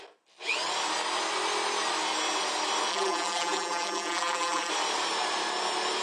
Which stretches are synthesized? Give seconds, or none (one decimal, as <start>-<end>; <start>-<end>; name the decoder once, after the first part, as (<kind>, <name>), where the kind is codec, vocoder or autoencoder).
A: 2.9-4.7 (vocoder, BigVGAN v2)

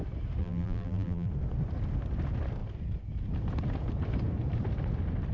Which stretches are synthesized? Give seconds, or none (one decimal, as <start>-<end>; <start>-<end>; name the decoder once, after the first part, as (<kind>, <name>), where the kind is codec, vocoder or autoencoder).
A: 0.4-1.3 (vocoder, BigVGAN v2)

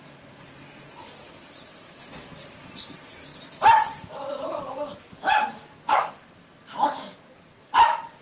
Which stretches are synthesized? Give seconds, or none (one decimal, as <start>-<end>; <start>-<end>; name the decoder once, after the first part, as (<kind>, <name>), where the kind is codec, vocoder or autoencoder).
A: 0.0-3.3 (vocoder, BigVGAN v2); 4.3-6.5

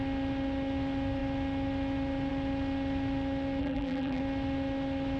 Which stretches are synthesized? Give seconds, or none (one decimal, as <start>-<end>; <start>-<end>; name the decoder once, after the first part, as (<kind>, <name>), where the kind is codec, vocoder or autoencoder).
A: 3.6-4.2 (vocoder, BigVGAN v2)

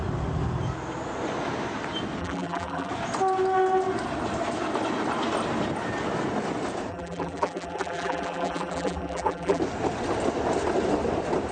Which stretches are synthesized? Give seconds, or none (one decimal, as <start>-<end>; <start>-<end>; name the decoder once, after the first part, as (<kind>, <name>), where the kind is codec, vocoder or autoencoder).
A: 2.2-2.9 (vocoder, BigVGAN v2); 6.9-9.6

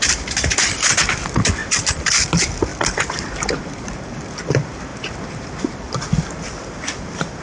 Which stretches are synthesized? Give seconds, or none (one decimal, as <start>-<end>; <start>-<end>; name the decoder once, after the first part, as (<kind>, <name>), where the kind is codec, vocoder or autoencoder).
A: 1.6-2.1 (vocoder, BigVGAN v2); 2.7-3.6